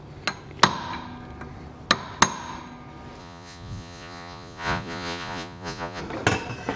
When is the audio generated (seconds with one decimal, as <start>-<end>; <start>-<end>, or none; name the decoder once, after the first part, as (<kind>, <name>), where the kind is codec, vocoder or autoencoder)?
3.2-6.0 (vocoder, Vocos)